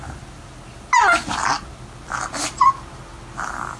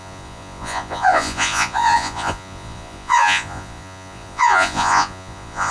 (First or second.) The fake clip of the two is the second